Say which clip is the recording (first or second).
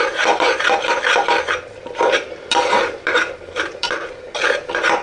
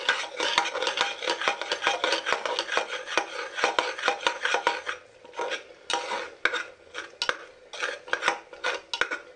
second